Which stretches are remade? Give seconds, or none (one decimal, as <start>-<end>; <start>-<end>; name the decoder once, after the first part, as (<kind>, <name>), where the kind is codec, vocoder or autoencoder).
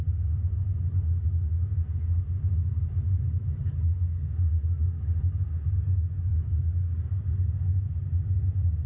none